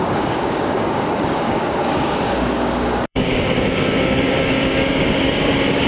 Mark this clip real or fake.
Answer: fake